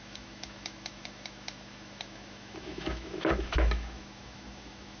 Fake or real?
fake